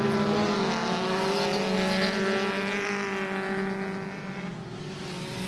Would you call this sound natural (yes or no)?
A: yes